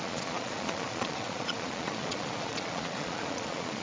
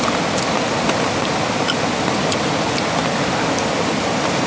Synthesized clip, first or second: first